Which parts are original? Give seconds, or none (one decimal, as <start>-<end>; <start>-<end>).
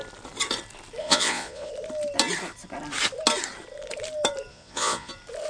0.0-1.0; 1.7-4.5; 5.1-5.5